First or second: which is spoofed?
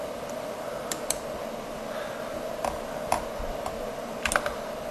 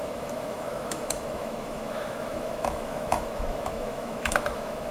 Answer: second